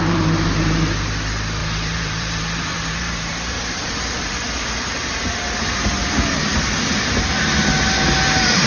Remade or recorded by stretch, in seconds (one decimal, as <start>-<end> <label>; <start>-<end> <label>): 0.0-1.6 recorded; 1.6-4.2 remade; 4.2-8.7 recorded